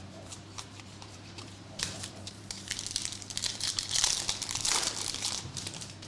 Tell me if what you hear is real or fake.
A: fake